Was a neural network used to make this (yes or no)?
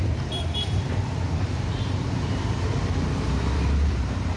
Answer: yes